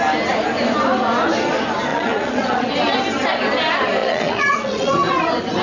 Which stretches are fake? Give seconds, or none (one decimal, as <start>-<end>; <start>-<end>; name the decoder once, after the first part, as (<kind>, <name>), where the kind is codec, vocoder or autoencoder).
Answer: 1.9-2.7 (vocoder, Vocos); 4.0-5.1